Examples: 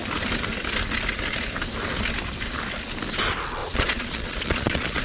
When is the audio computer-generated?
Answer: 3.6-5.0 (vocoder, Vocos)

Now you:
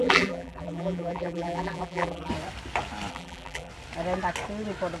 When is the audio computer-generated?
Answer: 0.0-2.3 (vocoder, BigVGAN v2); 3.1-3.7

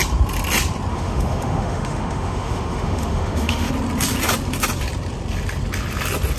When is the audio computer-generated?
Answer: 0.9-3.7 (autoencoder, DAC-VAE)

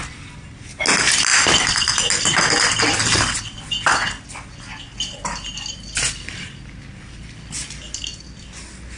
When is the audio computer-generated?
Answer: none

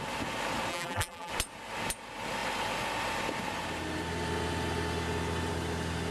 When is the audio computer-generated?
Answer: 0.7-1.3 (vocoder, BigVGAN v2)

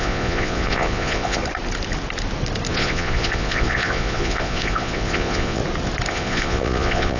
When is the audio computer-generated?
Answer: 0.0-1.4 (vocoder, Vocos); 2.7-5.6; 6.1-7.2